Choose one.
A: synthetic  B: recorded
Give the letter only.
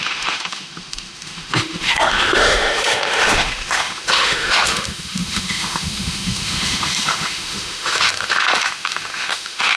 A